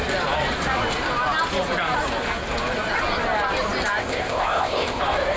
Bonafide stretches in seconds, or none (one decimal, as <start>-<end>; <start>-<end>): 0.0-4.0; 5.0-5.4